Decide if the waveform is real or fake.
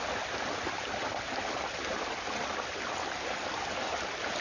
real